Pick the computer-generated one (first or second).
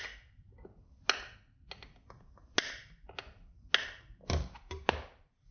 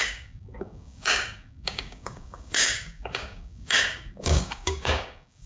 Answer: second